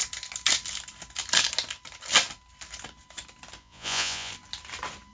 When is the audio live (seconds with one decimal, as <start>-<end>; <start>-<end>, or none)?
0.0-3.6; 4.3-5.1